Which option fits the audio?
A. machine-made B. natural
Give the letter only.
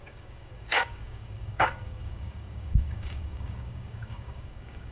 A